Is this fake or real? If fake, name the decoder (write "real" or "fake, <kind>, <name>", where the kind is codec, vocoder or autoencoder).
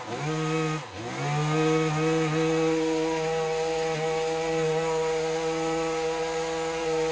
real